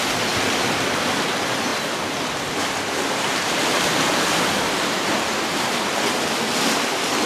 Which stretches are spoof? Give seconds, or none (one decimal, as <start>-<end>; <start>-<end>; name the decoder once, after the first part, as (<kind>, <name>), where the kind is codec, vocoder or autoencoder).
none